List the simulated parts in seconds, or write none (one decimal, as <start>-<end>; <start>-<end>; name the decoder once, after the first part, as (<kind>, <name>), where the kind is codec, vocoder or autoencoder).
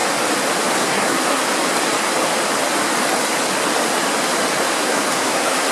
0.7-1.4 (codec, SNAC); 4.8-5.7